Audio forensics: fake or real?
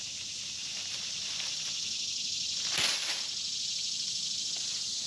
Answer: real